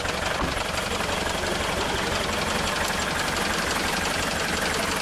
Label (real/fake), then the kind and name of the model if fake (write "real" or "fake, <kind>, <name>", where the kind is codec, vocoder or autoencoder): real